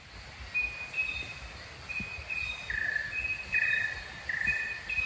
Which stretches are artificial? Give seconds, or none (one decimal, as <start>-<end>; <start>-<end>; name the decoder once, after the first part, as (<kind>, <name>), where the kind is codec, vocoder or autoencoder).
none